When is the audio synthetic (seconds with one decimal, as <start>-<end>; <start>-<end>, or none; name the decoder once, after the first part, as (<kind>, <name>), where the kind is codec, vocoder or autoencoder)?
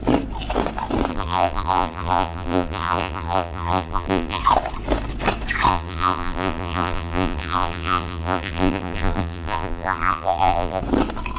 1.1-4.4 (vocoder, BigVGAN v2); 5.7-10.8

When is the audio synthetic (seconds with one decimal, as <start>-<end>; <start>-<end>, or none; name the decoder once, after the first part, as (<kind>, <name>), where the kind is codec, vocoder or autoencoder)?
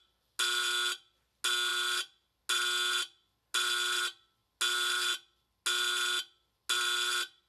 none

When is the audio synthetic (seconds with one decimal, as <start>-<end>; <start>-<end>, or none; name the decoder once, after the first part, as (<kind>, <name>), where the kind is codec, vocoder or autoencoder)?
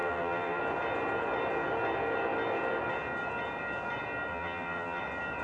0.0-0.6 (vocoder, BigVGAN v2); 4.3-5.0